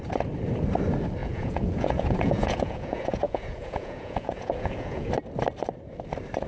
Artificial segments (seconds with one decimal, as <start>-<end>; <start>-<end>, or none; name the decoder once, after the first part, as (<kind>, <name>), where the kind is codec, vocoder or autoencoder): 1.2-5.1 (vocoder, Vocos)